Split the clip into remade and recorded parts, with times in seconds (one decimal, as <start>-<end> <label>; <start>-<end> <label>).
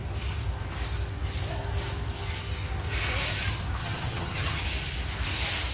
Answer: 0.0-3.8 recorded; 3.8-4.6 remade; 4.6-5.7 recorded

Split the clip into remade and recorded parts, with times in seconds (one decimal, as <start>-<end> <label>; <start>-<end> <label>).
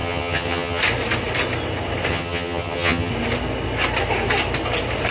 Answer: 0.0-0.8 remade; 0.8-2.1 recorded; 2.1-3.1 remade; 3.1-5.1 recorded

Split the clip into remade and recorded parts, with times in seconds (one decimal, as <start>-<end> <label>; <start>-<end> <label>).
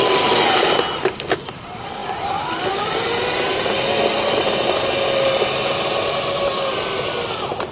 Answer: 0.0-7.7 recorded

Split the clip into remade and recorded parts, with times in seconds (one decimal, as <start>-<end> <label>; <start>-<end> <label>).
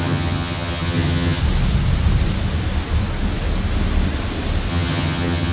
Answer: 0.0-1.4 remade; 1.4-4.7 recorded; 4.7-5.5 remade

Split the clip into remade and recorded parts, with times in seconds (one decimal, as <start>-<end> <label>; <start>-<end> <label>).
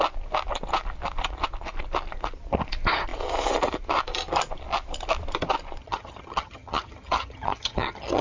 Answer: 0.0-5.8 recorded; 5.8-8.2 remade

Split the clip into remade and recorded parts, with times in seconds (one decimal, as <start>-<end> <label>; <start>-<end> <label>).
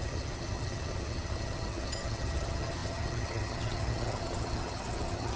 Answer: 0.0-5.4 remade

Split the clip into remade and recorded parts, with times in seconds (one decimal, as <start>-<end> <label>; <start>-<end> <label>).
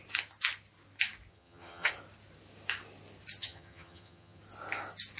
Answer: 0.0-1.3 recorded; 1.3-1.9 remade; 1.9-3.4 recorded; 3.4-4.4 remade; 4.4-5.2 recorded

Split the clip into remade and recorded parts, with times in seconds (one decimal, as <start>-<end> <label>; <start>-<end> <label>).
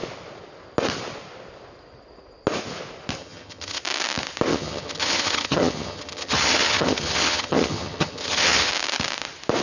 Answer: 0.0-3.2 recorded; 3.2-3.8 remade; 3.8-4.5 recorded; 4.5-8.7 remade; 8.7-9.6 recorded